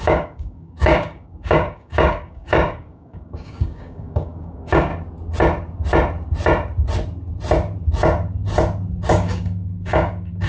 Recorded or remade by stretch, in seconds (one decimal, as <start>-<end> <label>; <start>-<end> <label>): 0.0-4.9 remade; 4.9-9.1 recorded; 9.1-10.5 remade